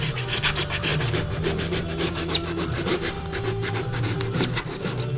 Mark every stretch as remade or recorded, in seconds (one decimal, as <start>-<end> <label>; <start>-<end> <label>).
0.0-0.9 recorded; 0.9-4.0 remade; 4.0-5.2 recorded